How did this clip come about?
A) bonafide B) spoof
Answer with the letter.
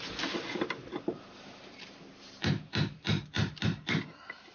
B